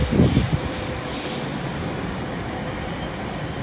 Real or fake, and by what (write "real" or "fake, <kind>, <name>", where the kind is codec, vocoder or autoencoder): fake, vocoder, BigVGAN v2